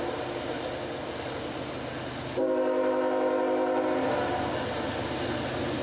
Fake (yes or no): no